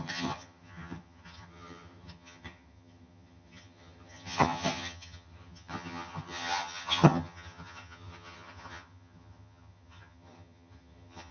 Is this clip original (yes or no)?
no